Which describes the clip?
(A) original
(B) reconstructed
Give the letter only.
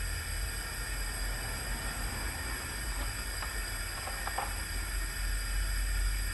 A